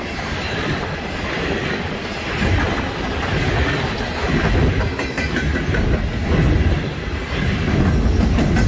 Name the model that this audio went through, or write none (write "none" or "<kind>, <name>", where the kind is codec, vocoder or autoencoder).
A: none